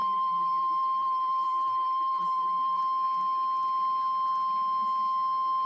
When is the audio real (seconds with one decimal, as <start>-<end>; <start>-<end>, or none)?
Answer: 2.8-5.7